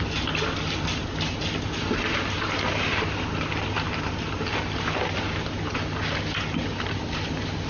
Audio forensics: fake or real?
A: real